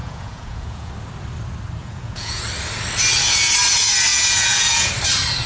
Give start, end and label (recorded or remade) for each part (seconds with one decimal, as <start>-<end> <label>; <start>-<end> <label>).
0.0-0.9 remade; 0.9-1.8 recorded; 1.8-2.4 remade; 2.4-4.1 recorded; 4.1-4.9 remade; 4.9-5.5 recorded